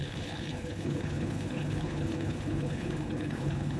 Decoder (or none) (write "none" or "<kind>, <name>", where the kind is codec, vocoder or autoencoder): codec, HILCodec